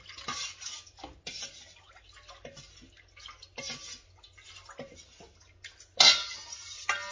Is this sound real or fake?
real